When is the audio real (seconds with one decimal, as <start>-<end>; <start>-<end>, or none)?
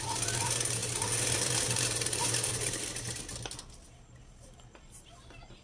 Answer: 0.0-5.6